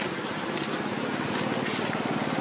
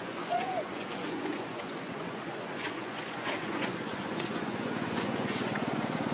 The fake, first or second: second